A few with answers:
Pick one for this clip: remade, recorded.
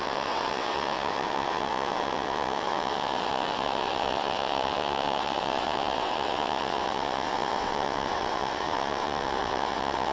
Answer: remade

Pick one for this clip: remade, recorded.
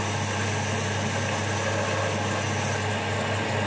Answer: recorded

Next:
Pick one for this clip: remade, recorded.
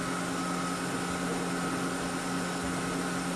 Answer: recorded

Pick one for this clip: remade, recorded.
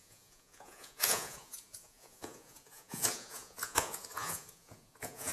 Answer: remade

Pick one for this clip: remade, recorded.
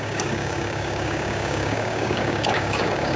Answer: remade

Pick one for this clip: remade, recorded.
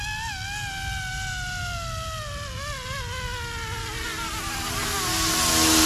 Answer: recorded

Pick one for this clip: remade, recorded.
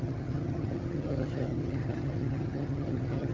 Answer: remade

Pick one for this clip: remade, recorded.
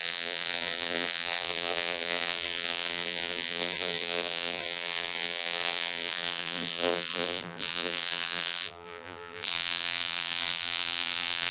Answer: remade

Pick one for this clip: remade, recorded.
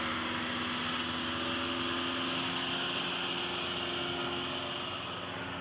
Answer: recorded